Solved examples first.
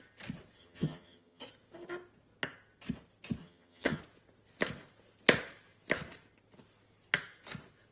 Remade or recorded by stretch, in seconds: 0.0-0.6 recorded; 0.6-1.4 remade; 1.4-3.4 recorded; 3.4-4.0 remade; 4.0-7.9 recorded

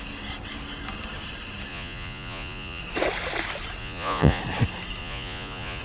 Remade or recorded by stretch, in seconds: 0.0-1.7 recorded; 1.7-2.8 remade; 2.8-3.8 recorded; 3.8-4.4 remade; 4.4-5.0 recorded; 5.0-5.8 remade

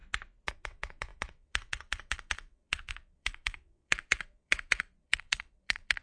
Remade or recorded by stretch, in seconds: 0.0-0.5 recorded; 0.5-6.0 remade